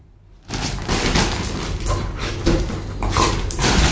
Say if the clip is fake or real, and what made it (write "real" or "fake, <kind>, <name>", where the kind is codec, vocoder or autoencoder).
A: real